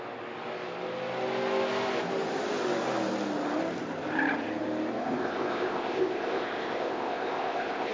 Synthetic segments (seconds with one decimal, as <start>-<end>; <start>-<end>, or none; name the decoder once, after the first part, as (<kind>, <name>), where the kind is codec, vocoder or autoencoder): 5.0-7.9 (codec, ZipCodec)